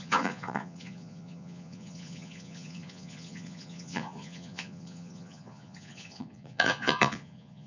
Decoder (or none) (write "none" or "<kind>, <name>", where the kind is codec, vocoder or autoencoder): vocoder, Vocos